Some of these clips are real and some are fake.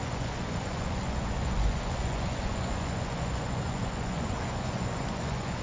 fake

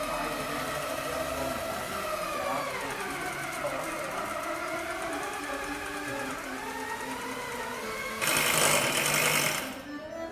real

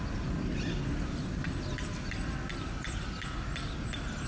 real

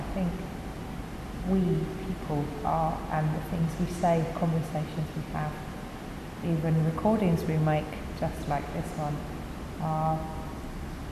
real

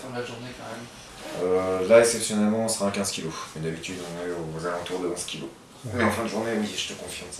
real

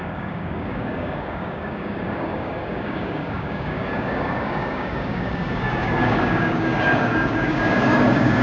fake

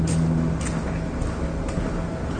real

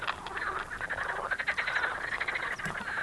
real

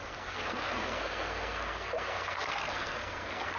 fake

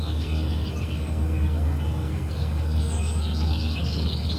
fake